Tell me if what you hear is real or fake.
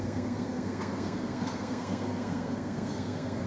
fake